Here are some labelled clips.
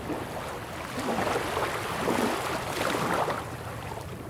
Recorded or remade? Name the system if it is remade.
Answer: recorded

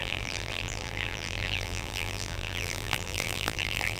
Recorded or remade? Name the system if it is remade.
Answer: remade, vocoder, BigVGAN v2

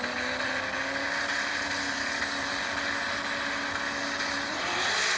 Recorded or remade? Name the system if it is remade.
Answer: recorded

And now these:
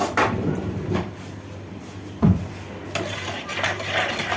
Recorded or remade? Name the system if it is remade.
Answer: remade, vocoder, BigVGAN v2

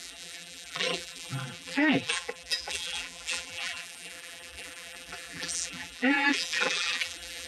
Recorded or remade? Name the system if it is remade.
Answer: remade, vocoder, BigVGAN v2